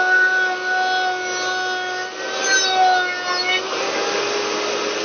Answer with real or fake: real